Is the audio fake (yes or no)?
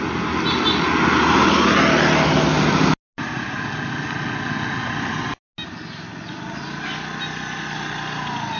no